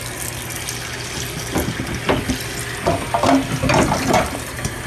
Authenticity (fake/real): real